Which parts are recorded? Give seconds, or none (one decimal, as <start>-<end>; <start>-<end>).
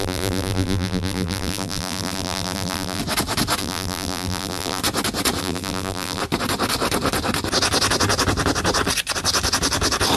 3.0-3.6; 4.8-5.4; 6.2-10.2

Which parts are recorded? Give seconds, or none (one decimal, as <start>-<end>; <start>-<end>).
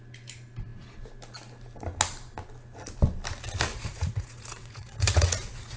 0.0-3.7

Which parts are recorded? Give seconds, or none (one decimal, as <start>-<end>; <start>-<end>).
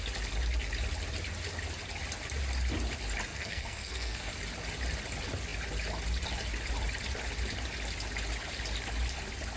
0.0-3.3; 4.3-9.6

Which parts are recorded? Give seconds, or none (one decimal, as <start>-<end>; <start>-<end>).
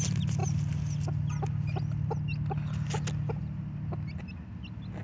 0.0-5.0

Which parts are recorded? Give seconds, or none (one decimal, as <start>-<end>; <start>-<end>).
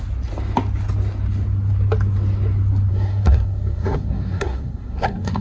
0.0-2.9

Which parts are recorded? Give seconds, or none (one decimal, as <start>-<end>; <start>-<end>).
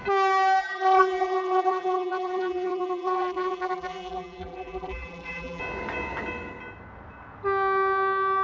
0.0-0.6; 5.6-8.4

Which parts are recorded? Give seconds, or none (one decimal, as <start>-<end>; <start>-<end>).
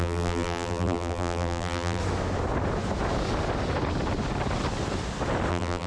2.0-5.5